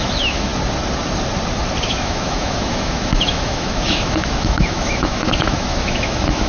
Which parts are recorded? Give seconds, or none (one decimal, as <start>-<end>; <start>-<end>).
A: 0.5-1.8